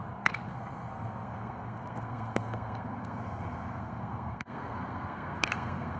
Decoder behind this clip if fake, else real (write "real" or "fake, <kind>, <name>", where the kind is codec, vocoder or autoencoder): fake, codec, SNAC